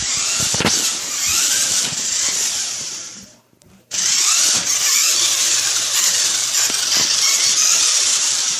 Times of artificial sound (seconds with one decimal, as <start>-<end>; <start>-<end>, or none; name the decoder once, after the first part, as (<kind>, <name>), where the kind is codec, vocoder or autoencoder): 0.0-8.6 (vocoder, BigVGAN v2)